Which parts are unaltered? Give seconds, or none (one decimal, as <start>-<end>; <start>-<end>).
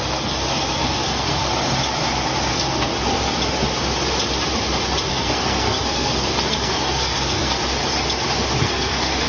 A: 1.4-2.5; 2.9-5.1; 7.8-8.6